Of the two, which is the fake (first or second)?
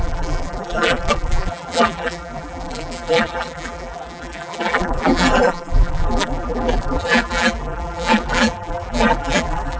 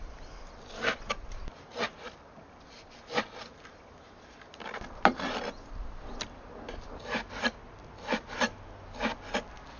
first